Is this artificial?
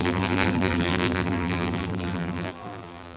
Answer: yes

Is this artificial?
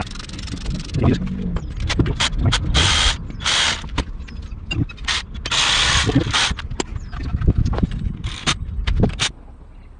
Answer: no